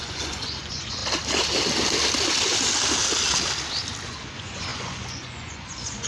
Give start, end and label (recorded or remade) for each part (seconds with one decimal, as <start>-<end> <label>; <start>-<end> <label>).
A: 0.0-1.0 remade; 1.0-4.0 recorded; 4.0-6.1 remade